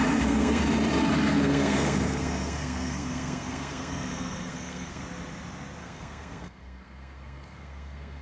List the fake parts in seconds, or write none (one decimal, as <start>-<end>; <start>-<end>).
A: 0.0-0.6; 1.3-5.0; 5.8-8.2